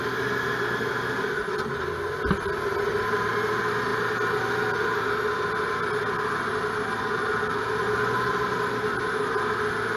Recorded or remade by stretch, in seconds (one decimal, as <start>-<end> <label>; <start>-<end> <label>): 0.0-10.0 recorded